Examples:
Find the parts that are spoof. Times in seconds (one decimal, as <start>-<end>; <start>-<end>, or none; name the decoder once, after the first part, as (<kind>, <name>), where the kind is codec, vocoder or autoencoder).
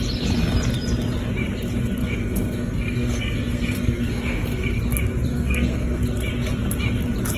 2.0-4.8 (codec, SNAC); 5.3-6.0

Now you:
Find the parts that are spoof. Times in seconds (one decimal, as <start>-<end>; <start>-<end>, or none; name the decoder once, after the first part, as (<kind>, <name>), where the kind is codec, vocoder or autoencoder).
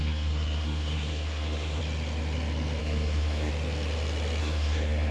0.0-1.8 (codec, SNAC); 2.8-3.5; 4.4-5.1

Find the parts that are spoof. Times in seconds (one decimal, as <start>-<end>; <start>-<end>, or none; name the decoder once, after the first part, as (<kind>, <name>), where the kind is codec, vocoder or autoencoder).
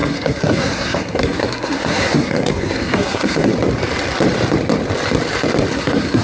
0.0-3.5 (codec, SNAC); 5.7-6.2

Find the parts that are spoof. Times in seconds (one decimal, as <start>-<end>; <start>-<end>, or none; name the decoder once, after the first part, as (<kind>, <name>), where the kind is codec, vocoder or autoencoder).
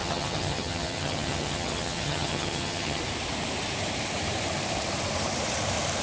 0.0-3.0 (vocoder, HiFi-GAN)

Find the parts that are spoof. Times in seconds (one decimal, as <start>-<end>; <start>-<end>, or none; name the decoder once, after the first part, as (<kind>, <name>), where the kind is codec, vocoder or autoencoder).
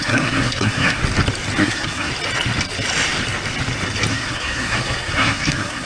0.0-1.0 (codec, SNAC); 1.6-2.1; 4.1-5.9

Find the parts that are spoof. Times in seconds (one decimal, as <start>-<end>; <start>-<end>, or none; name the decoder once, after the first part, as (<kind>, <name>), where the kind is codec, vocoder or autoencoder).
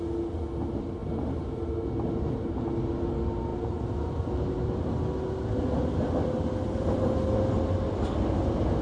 3.5-4.3 (vocoder, BigVGAN v2)